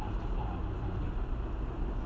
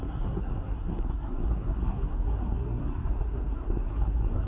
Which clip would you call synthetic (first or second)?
second